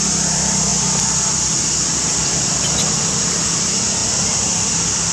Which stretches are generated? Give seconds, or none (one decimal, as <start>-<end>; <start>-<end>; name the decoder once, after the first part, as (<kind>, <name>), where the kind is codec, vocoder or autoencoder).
0.0-0.7 (vocoder, BigVGAN v2); 2.6-5.1